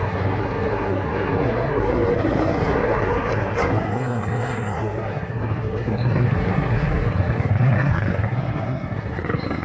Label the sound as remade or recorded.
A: remade